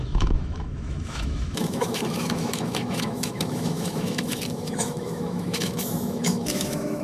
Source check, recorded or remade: remade